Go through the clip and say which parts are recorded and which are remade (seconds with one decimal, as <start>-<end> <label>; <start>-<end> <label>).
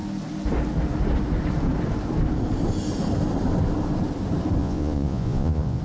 0.0-4.6 recorded; 4.6-5.8 remade